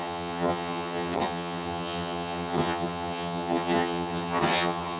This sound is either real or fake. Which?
fake